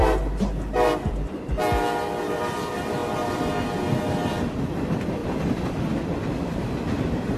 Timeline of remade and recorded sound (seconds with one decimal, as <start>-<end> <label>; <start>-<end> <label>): 0.0-1.6 remade; 1.6-2.3 recorded; 2.3-3.0 remade; 3.0-4.8 recorded; 4.8-7.4 remade